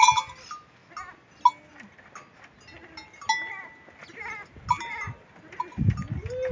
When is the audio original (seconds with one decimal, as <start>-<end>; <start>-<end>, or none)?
0.0-6.5